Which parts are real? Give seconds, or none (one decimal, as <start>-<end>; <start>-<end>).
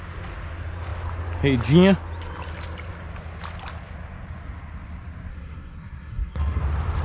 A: 0.0-5.3; 6.6-7.0